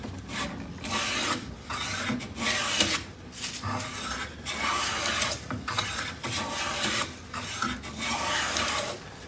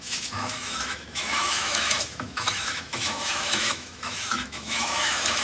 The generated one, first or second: second